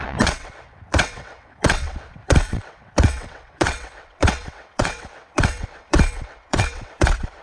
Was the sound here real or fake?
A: fake